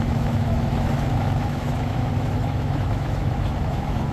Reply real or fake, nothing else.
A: fake